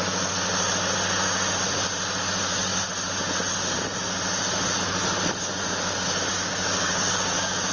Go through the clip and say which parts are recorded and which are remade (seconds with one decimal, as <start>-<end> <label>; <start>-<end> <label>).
0.0-6.3 recorded; 6.3-7.7 remade